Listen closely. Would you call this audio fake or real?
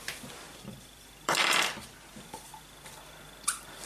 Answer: fake